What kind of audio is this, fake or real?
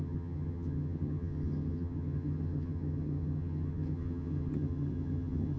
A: fake